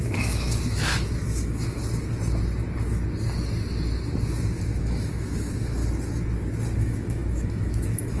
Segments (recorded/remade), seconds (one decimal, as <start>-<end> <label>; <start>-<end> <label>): 0.0-1.8 remade; 1.8-4.8 recorded; 4.8-5.8 remade; 5.8-6.8 recorded; 6.8-8.2 remade

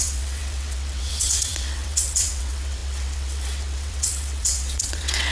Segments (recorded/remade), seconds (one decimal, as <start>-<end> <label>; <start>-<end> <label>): 0.0-5.3 remade

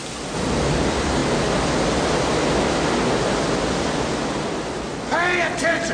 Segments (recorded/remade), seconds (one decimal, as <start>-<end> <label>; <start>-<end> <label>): 0.0-5.9 recorded

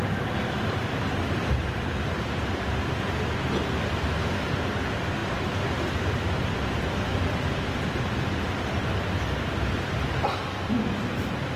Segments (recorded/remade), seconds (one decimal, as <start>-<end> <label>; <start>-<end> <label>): 0.0-11.6 recorded